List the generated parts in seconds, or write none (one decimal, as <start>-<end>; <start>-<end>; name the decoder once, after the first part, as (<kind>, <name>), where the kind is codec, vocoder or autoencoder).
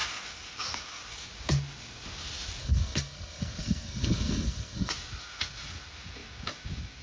2.6-4.9 (codec, SNAC)